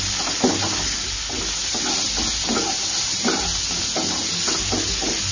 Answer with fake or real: real